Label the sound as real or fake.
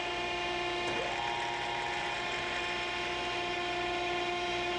real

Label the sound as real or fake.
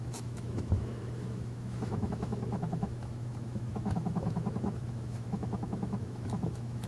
fake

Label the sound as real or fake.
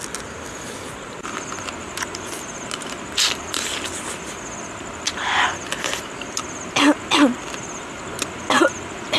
real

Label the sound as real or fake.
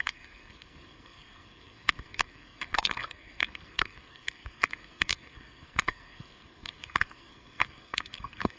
fake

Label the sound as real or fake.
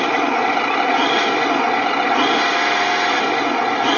real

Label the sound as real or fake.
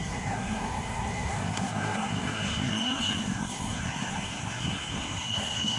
fake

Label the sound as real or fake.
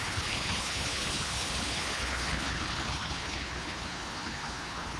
fake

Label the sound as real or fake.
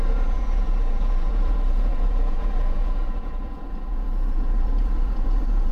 fake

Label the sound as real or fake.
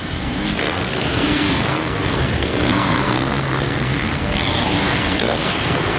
fake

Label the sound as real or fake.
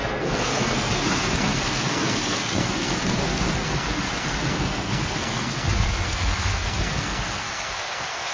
fake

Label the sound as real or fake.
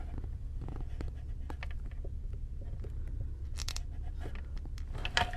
real